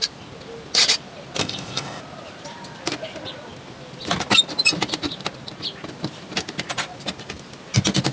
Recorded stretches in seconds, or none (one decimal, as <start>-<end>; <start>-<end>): 0.0-1.4; 2.0-8.1